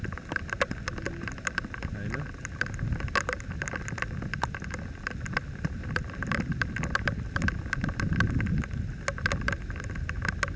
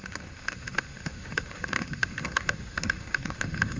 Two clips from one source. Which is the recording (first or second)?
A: first